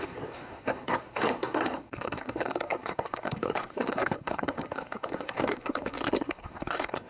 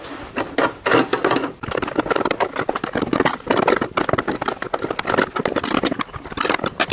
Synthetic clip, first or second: first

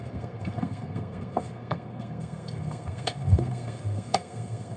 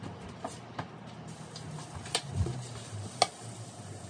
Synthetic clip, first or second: first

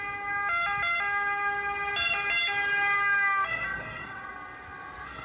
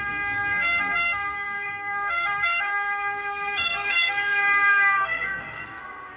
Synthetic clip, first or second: second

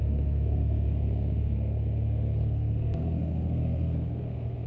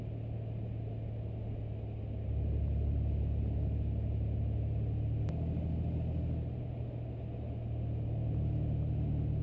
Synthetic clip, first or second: first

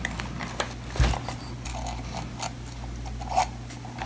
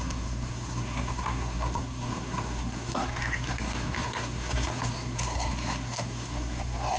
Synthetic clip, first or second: second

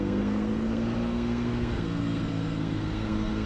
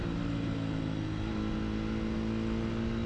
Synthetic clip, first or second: first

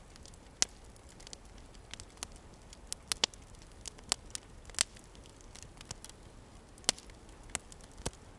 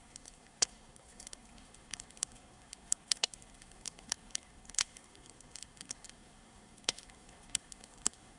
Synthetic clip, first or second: second